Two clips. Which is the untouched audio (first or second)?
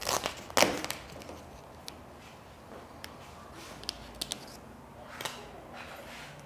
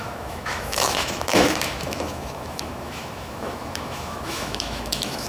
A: first